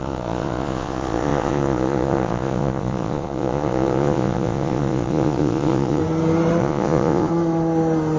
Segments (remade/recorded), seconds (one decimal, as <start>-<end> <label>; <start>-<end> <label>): 0.0-6.0 remade; 6.0-6.6 recorded; 6.6-7.3 remade; 7.3-8.2 recorded